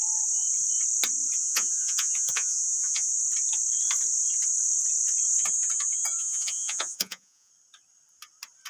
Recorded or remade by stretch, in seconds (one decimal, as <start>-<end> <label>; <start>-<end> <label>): 0.0-1.4 recorded; 1.4-3.1 remade; 3.1-6.2 recorded; 6.2-7.5 remade; 7.5-8.7 recorded